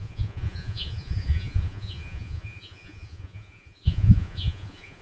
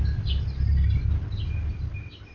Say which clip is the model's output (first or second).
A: first